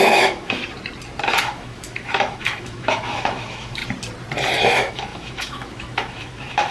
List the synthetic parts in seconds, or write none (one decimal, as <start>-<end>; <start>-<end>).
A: 0.0-0.6; 1.4-3.8; 4.6-6.7